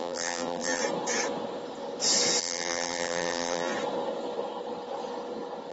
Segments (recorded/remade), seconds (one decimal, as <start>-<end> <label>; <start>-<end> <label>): 0.0-0.8 remade; 0.8-2.4 recorded; 2.4-3.7 remade; 3.7-5.7 recorded